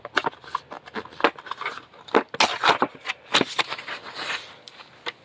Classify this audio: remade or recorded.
recorded